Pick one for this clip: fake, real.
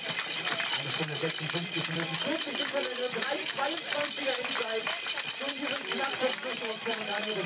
fake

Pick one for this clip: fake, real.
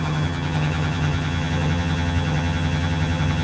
fake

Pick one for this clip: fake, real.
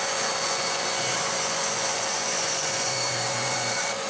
fake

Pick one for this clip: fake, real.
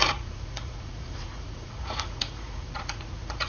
fake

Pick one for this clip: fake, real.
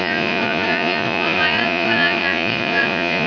fake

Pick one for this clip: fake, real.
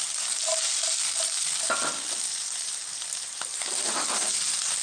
real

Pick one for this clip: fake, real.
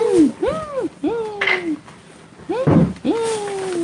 real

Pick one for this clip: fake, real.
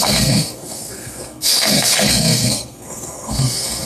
fake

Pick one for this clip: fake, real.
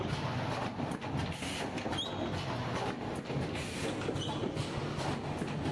real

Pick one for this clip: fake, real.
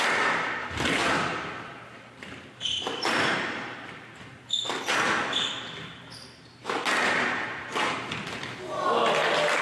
real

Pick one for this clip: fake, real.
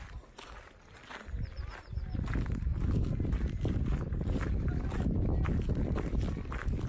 real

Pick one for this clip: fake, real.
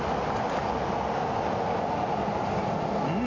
real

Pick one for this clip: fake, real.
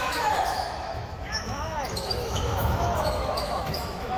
fake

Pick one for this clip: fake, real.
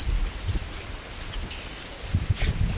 fake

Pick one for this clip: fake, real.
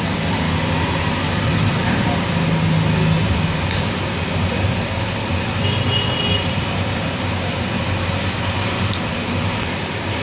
real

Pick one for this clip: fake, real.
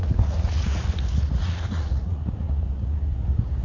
fake